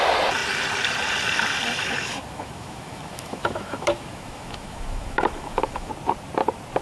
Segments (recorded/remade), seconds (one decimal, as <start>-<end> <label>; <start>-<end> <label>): 0.0-1.8 recorded; 1.8-5.9 remade; 5.9-6.8 recorded

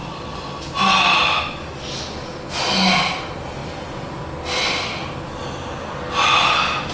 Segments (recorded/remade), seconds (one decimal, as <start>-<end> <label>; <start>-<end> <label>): 0.0-6.9 recorded